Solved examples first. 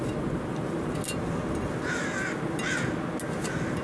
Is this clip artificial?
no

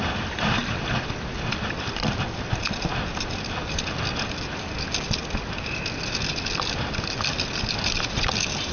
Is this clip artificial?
no